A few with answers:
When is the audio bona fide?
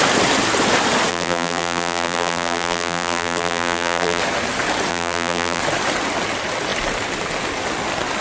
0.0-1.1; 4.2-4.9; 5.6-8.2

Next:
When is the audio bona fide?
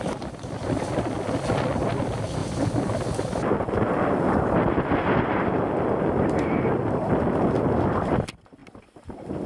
0.0-9.5